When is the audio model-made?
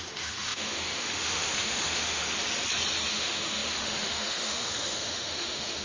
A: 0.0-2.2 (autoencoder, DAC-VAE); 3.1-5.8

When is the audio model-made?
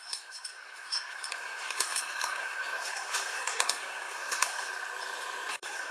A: 0.0-4.7 (codec, SNAC); 5.5-5.9